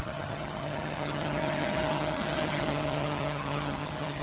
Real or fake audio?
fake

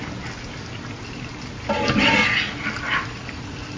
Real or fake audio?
real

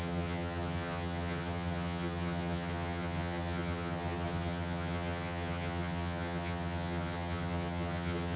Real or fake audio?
fake